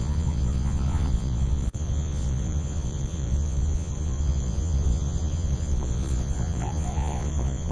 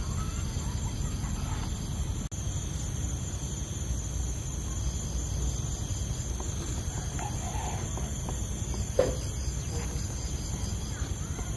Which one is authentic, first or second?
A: second